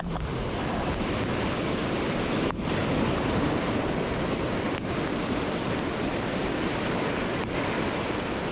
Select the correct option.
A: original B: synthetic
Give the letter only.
A